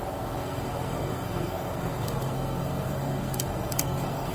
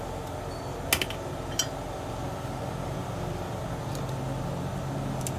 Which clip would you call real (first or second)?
second